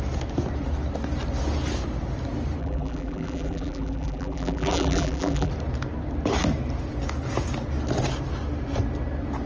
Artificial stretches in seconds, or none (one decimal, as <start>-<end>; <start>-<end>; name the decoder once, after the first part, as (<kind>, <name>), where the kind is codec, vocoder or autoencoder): 2.6-5.5 (vocoder, BigVGAN v2)